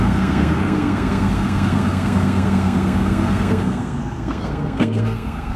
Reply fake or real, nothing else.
fake